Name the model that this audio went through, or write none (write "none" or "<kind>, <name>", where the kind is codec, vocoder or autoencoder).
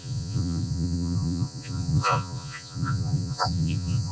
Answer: vocoder, Vocos